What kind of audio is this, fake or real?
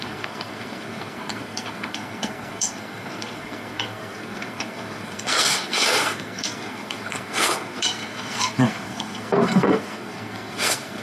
fake